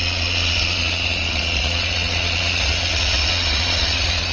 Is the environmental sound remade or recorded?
remade